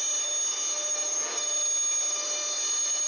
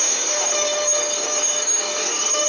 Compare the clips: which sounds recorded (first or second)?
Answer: first